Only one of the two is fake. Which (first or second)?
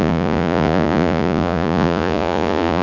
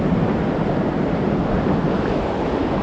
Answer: first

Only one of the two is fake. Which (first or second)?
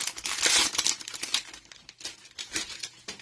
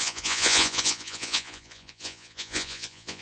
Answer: second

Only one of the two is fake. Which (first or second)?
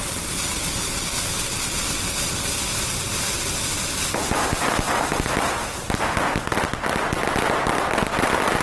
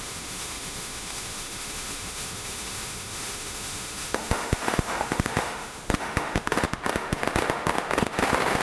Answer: second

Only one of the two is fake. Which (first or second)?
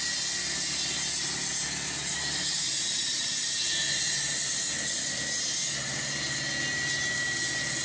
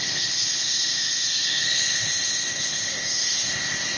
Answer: second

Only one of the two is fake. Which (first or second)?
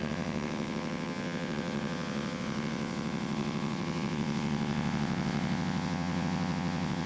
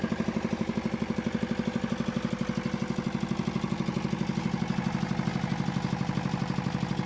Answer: first